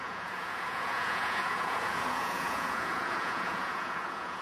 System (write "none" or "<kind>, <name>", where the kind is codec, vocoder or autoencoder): vocoder, Vocos